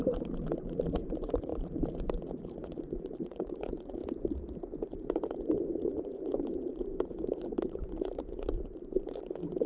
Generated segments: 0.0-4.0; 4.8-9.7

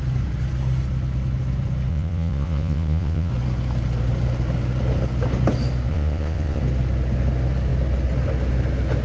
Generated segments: 1.9-3.3; 5.9-6.6

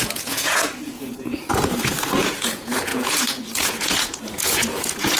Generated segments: 0.0-5.2

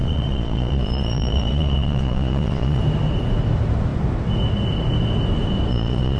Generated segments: 0.0-2.8; 5.7-6.2

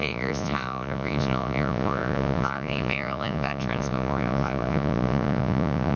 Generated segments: 0.0-6.0

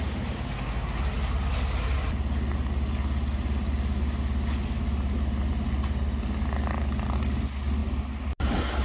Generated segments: none

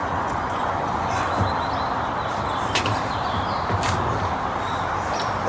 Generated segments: 0.0-1.5

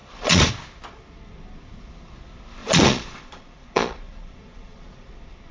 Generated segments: 0.0-0.5; 2.6-5.1